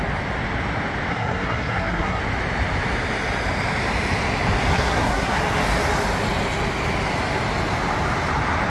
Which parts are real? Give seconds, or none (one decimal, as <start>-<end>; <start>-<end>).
0.0-1.1; 2.2-4.7; 5.4-8.7